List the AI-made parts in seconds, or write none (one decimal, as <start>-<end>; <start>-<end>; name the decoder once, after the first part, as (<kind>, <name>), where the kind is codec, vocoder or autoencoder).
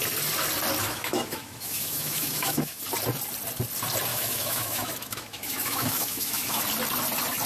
0.8-2.8 (autoencoder, DAC-VAE); 4.1-6.6